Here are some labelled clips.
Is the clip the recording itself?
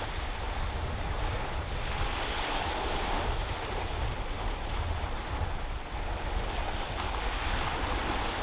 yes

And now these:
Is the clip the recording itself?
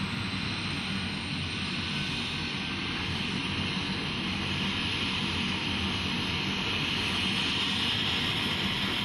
yes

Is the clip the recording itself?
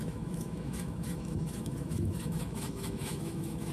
no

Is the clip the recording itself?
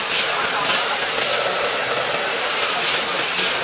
yes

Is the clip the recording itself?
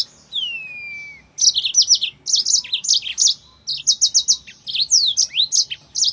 yes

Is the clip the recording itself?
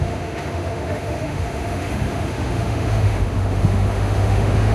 no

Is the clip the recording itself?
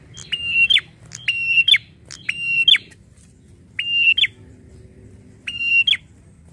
yes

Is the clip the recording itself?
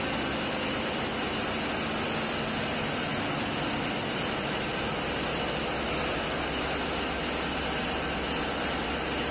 yes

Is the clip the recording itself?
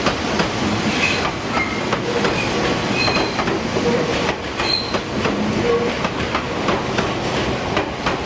yes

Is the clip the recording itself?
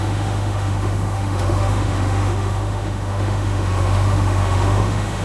no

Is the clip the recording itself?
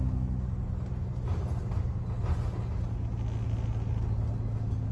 yes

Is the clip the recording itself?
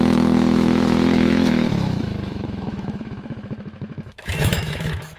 no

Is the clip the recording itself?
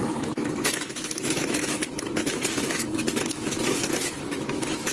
no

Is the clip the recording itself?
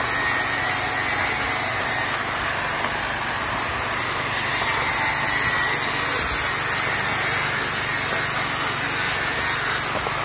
yes